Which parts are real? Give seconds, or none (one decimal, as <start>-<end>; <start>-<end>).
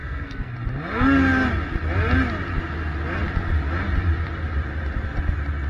0.5-5.7